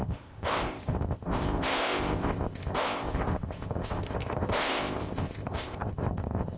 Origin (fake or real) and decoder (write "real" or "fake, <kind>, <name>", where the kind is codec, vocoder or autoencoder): fake, codec, ZipCodec